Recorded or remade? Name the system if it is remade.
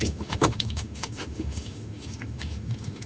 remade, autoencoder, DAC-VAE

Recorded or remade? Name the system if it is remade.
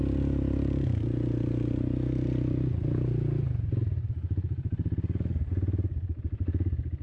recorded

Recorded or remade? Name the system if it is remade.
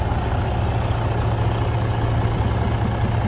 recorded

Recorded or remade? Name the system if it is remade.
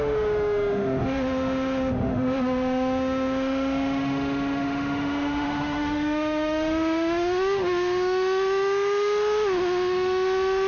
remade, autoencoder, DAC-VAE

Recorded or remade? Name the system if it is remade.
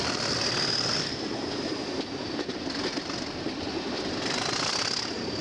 recorded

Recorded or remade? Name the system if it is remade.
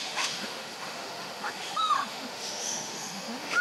remade, autoencoder, DAC-VAE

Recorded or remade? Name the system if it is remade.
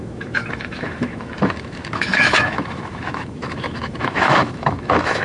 remade, autoencoder, DAC-VAE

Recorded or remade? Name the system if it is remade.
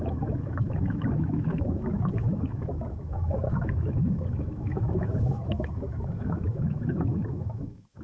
remade, autoencoder, DAC-VAE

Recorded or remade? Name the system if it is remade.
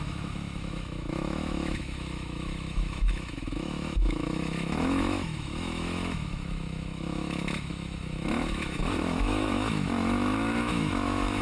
remade, autoencoder, DAC-VAE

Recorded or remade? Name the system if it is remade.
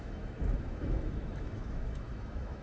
remade, autoencoder, DAC-VAE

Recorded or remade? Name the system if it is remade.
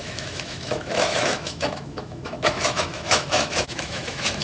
remade, autoencoder, DAC-VAE